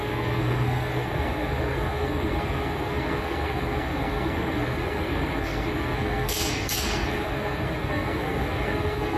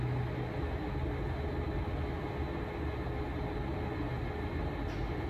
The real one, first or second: second